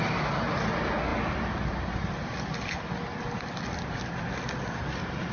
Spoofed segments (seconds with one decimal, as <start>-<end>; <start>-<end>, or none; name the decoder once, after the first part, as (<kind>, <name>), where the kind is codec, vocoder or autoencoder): none